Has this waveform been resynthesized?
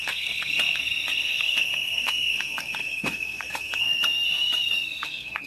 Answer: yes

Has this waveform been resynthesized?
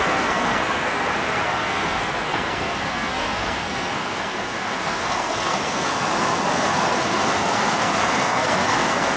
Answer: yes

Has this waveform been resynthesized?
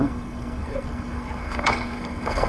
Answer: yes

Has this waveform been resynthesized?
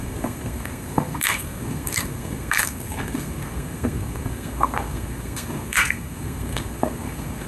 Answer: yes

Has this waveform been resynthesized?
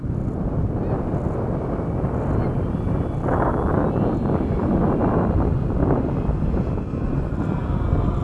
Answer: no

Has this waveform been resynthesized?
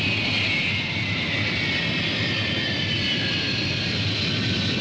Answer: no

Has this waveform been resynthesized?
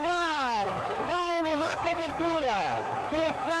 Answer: yes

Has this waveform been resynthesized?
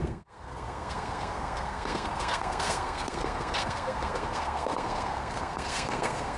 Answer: yes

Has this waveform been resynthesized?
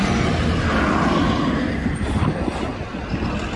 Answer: no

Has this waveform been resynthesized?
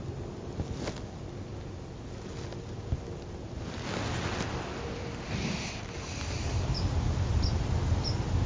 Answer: no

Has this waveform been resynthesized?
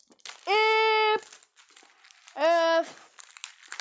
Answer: no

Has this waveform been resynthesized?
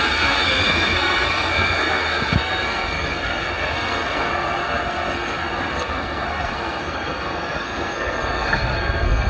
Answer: yes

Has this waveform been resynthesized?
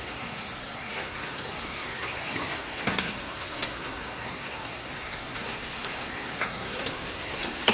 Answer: yes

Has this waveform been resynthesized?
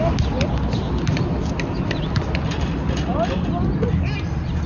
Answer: no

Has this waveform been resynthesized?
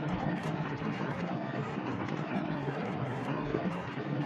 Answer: yes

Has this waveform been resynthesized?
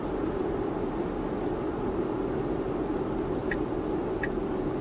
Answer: no